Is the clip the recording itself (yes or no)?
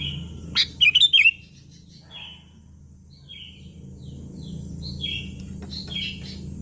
yes